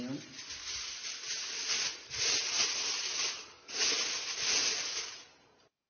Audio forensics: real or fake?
real